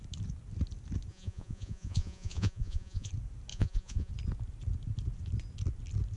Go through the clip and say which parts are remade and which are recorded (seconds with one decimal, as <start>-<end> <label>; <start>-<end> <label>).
0.0-1.1 recorded; 1.1-3.1 remade; 3.1-3.5 recorded; 3.5-4.1 remade; 4.1-6.2 recorded